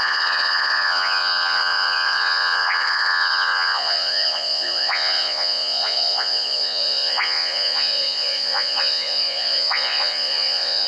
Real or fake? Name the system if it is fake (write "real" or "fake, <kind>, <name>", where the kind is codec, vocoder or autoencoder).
fake, vocoder, Vocos